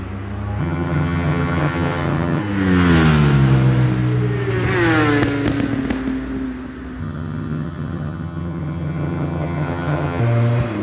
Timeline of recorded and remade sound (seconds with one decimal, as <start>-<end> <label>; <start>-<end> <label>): 0.0-0.6 recorded; 0.6-2.4 remade; 2.4-7.0 recorded; 7.0-10.2 remade; 10.2-10.8 recorded